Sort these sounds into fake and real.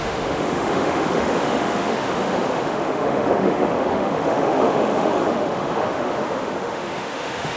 fake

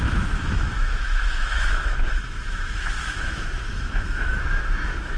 fake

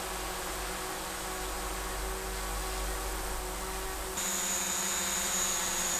real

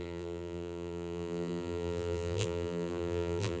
fake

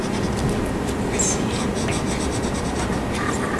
real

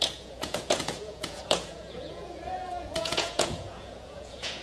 fake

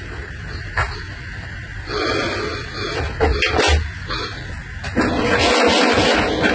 real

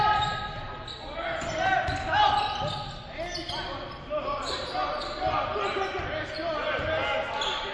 real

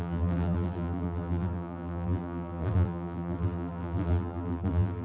fake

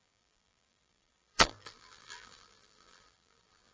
fake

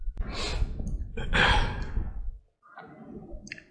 real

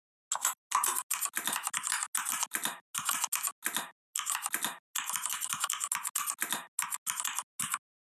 real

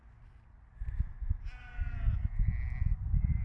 real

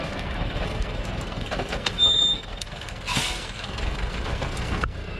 fake